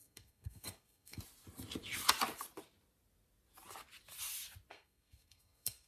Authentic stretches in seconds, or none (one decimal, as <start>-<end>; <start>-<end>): 1.2-4.7

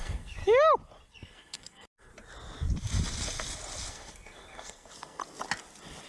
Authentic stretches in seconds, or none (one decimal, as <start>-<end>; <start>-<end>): 0.4-1.1; 2.1-3.9; 5.2-6.1

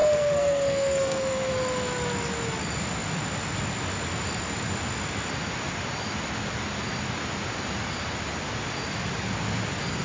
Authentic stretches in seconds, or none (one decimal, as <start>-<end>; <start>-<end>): 1.5-10.0

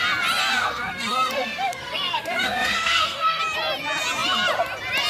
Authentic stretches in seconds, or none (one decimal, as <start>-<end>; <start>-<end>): 0.0-0.5; 3.4-5.1

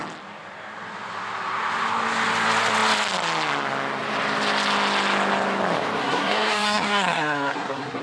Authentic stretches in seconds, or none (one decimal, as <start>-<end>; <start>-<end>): 0.0-6.0

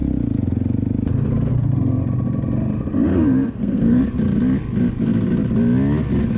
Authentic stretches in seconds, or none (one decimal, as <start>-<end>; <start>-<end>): 0.0-3.1; 4.0-6.4

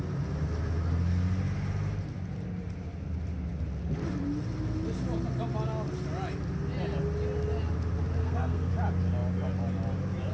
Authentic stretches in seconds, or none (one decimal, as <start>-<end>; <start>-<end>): 0.0-8.2; 8.7-10.3

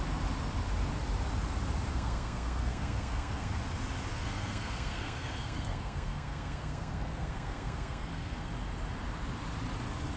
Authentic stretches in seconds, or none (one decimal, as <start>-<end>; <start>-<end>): 0.0-1.9; 3.6-4.1; 8.5-10.2